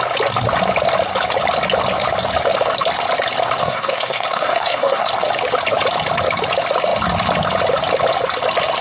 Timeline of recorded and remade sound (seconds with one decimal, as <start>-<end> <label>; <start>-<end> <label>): 0.0-3.6 recorded; 3.6-5.1 remade; 5.1-8.8 recorded